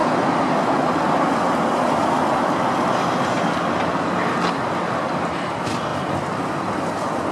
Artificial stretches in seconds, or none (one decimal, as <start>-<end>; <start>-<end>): none